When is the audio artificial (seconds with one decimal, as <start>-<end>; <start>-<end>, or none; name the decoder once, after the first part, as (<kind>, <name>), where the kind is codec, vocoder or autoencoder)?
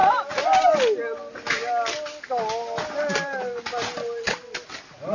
none